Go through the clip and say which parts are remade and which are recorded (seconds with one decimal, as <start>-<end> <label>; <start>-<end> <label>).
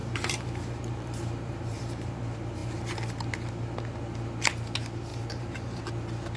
0.0-2.2 remade; 2.2-5.1 recorded; 5.1-5.8 remade; 5.8-6.4 recorded